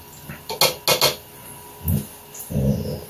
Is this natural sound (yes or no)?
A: yes